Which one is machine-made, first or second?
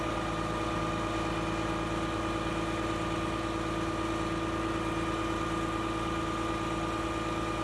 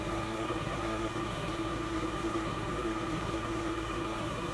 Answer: second